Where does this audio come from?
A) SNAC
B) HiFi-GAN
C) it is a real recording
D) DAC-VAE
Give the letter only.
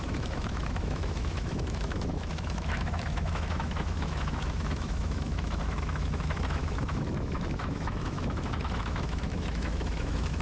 D